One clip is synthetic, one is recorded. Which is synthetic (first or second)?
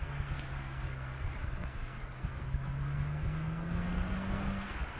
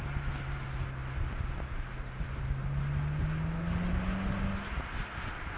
first